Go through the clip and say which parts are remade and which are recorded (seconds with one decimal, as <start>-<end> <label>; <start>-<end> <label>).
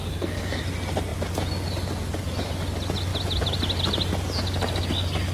0.0-0.6 remade; 0.6-5.3 recorded